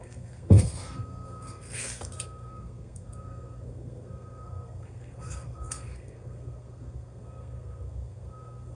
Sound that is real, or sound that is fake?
fake